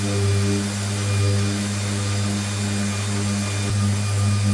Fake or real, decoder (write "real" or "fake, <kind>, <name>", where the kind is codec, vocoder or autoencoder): real